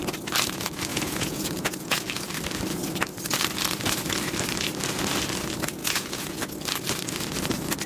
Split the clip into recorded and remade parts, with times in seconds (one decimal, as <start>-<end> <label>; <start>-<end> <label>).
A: 0.0-0.9 recorded; 0.9-2.1 remade; 2.1-5.8 recorded; 5.8-6.4 remade; 6.4-7.9 recorded